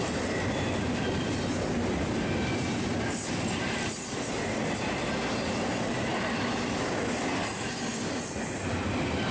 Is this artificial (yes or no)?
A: yes